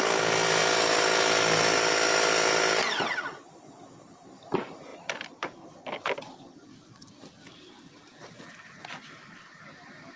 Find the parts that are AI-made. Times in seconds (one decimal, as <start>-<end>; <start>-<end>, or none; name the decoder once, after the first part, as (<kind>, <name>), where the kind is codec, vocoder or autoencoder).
none